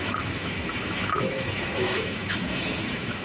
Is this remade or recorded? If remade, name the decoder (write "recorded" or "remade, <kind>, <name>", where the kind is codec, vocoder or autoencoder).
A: remade, autoencoder, DAC-VAE